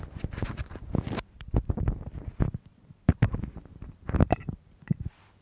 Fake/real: fake